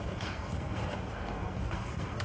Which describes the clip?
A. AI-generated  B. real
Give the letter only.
A